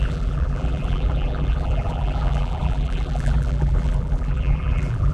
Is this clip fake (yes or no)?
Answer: yes